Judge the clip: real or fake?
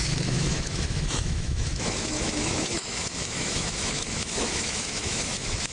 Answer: fake